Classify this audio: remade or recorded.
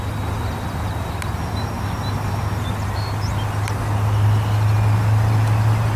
recorded